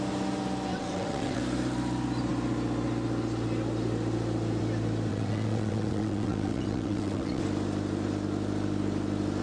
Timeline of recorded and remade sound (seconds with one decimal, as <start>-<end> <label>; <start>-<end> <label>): 0.0-0.7 recorded; 0.7-1.4 remade; 1.4-5.1 recorded; 5.1-7.4 remade; 7.4-9.4 recorded